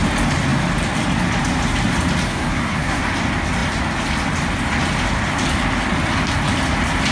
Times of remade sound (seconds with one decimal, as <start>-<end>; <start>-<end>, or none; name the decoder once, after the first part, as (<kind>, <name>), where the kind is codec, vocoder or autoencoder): 2.3-3.0 (codec, SNAC)